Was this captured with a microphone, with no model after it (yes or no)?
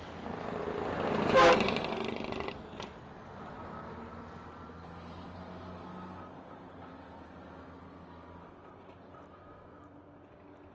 yes